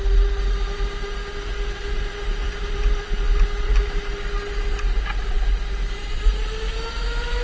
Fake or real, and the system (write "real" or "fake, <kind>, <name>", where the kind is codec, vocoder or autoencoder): real